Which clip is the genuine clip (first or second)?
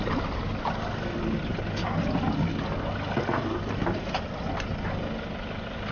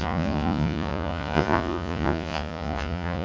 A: first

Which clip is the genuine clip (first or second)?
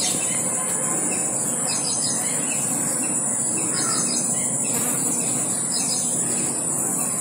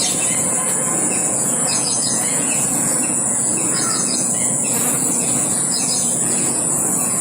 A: first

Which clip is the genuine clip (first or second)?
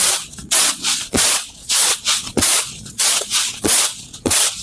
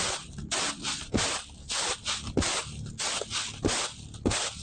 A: second